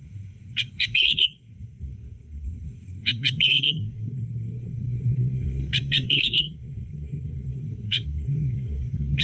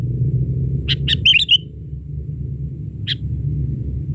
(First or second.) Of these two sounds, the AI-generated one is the first